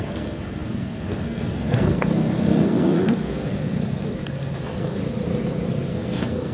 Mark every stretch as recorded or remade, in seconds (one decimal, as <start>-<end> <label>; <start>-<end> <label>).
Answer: 0.0-5.0 remade; 5.0-5.7 recorded; 5.7-6.5 remade